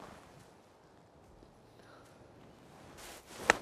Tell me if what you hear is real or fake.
real